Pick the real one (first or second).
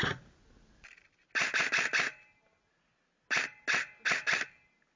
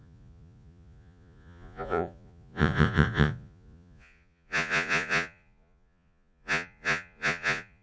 first